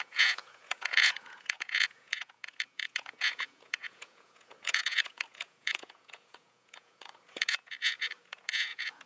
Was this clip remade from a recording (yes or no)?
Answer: yes